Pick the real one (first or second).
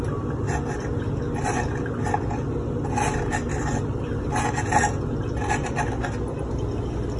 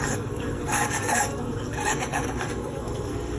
first